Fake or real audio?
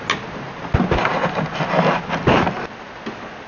real